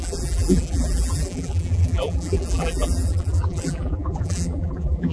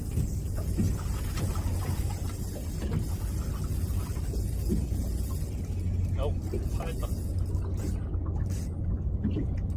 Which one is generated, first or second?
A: first